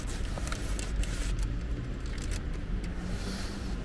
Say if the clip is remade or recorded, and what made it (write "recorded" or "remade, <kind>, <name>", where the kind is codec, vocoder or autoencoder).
recorded